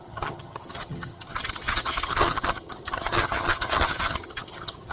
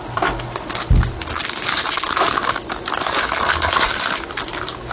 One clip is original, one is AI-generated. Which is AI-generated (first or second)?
first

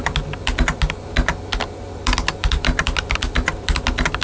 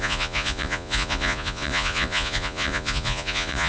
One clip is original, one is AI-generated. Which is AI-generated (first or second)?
second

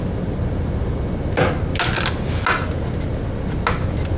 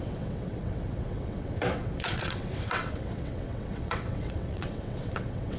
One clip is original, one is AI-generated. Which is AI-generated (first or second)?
second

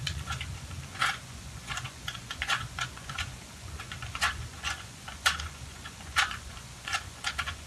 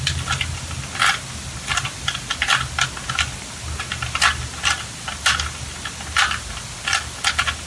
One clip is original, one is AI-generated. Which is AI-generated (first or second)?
first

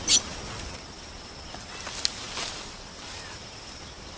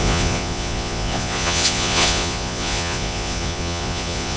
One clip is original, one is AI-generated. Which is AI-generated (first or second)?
second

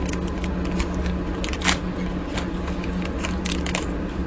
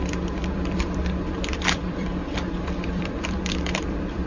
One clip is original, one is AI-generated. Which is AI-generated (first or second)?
second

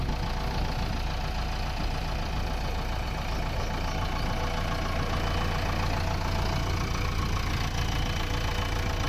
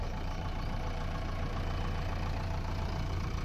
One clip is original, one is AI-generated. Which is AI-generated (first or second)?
second